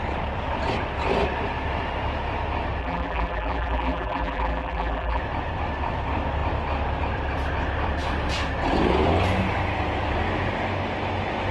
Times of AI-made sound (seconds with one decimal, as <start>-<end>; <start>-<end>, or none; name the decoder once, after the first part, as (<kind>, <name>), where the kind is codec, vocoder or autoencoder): 2.8-5.2 (vocoder, BigVGAN v2)